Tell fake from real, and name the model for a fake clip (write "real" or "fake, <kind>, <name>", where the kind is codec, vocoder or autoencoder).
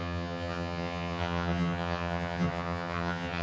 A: fake, vocoder, HiFi-GAN